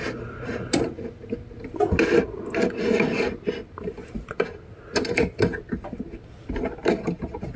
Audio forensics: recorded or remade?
recorded